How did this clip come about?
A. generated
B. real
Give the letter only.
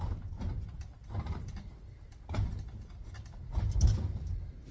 B